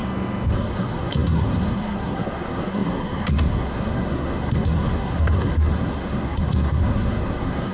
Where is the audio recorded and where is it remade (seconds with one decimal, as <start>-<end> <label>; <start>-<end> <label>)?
0.0-0.5 recorded; 0.5-7.7 remade